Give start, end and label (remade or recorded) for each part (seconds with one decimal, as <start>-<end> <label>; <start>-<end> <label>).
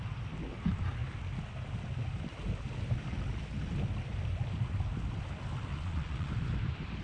0.0-5.7 recorded; 5.7-6.3 remade; 6.3-7.0 recorded